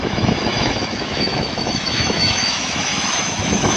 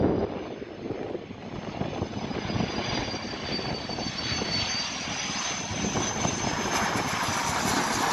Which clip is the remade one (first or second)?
first